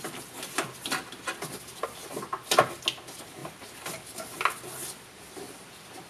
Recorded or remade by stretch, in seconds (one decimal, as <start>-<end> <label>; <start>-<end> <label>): 0.0-6.1 recorded